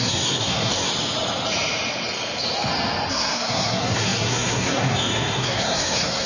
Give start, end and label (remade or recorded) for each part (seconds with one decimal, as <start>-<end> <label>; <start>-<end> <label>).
0.0-0.9 remade; 0.9-3.1 recorded; 3.1-6.3 remade